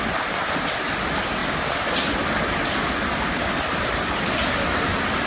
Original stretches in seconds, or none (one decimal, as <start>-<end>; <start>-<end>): 0.0-5.3